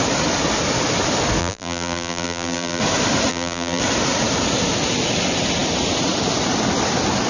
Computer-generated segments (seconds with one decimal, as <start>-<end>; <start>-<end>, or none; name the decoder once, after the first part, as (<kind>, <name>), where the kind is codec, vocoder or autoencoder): 1.4-2.8 (vocoder, BigVGAN v2); 3.3-3.8

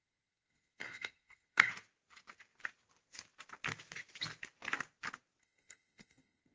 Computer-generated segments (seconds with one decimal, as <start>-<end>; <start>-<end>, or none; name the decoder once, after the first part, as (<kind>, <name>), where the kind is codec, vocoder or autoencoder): 0.0-1.7 (codec, SNAC); 5.4-6.5

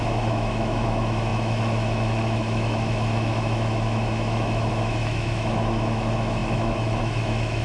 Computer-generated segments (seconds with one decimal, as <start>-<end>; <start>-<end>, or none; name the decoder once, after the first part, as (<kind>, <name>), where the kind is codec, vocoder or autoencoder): 0.0-7.6 (autoencoder, DAC-VAE)

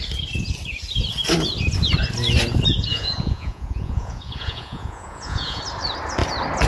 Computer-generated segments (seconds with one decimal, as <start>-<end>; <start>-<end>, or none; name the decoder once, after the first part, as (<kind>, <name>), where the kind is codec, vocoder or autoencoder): 2.9-5.6 (vocoder, Vocos)

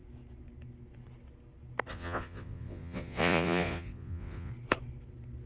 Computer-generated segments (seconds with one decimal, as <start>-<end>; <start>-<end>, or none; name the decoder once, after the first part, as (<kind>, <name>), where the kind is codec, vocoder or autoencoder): 1.9-4.5 (vocoder, Vocos)

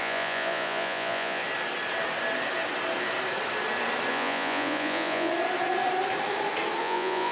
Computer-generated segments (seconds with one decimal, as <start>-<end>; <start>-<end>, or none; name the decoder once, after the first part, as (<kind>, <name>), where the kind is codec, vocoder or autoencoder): 0.0-1.4 (vocoder, Vocos); 4.1-5.3; 6.8-7.3

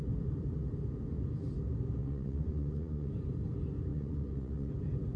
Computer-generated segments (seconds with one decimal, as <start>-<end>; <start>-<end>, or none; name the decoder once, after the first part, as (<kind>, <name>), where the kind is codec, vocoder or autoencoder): 2.0-3.1 (vocoder, Vocos); 3.9-4.7

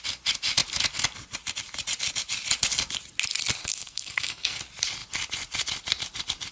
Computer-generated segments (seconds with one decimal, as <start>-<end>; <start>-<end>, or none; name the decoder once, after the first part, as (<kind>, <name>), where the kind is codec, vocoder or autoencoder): 3.6-4.6 (codec, SNAC)